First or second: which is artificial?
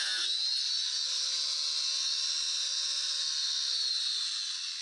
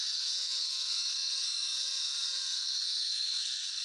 second